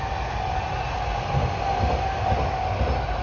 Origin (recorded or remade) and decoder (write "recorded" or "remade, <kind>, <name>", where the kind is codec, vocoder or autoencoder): recorded